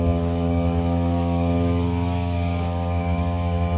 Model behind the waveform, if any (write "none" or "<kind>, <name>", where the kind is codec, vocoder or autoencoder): codec, DAC